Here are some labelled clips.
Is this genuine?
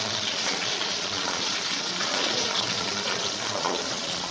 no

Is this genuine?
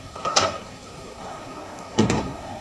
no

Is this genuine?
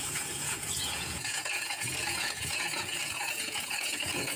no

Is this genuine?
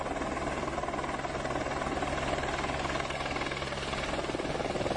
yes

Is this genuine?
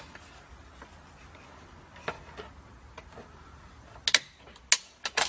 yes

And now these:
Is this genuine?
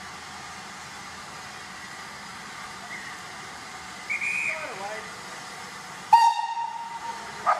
yes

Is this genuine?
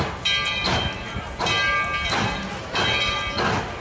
yes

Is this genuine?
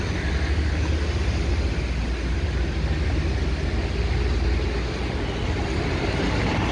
yes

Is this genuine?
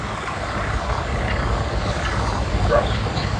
no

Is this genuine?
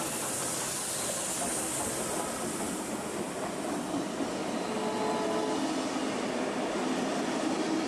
yes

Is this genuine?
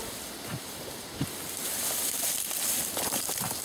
yes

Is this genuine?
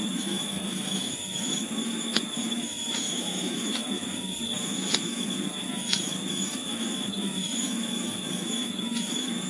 no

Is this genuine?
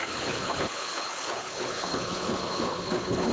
no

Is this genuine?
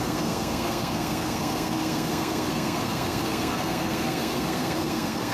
no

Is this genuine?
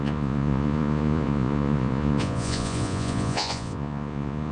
no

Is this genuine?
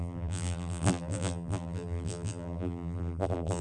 no